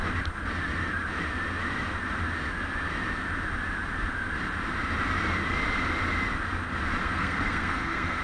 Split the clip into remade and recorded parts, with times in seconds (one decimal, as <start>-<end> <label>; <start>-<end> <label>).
0.0-7.0 recorded; 7.0-8.2 remade